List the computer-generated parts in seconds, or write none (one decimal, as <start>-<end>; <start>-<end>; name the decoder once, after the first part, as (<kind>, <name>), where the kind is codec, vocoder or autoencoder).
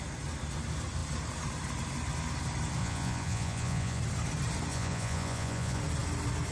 2.8-4.0 (vocoder, Vocos); 4.7-5.8